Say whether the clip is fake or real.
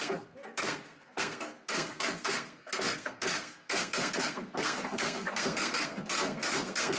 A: fake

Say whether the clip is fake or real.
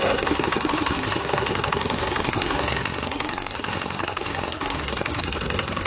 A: fake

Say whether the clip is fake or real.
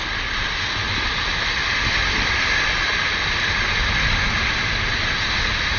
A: real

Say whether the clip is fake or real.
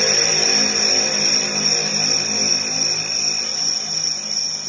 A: real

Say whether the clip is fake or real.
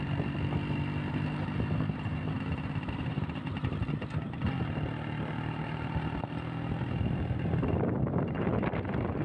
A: real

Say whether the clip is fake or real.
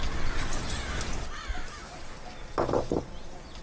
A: real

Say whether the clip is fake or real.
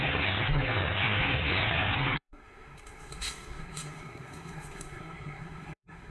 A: fake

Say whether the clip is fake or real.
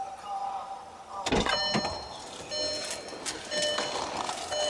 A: real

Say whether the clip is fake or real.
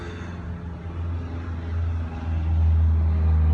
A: real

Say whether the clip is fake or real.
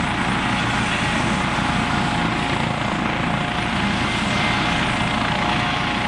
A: real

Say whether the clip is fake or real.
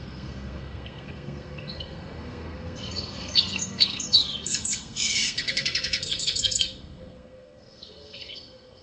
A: fake